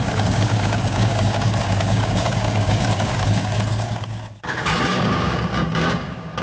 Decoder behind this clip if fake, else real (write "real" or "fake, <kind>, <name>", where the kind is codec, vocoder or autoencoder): fake, codec, DAC